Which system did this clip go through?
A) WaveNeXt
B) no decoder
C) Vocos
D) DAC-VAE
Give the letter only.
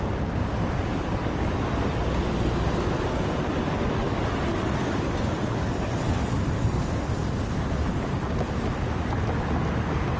B